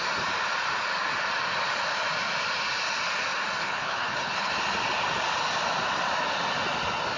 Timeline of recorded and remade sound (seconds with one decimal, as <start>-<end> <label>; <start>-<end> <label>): 0.0-3.6 recorded; 3.6-4.5 remade; 4.5-7.2 recorded